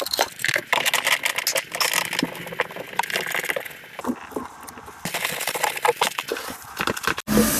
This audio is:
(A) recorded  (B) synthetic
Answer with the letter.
A